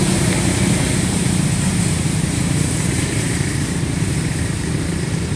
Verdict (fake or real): fake